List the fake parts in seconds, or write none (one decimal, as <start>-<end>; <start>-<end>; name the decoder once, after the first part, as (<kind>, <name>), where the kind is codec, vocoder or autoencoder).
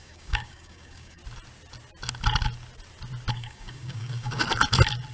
0.0-1.2 (codec, DAC); 3.3-4.4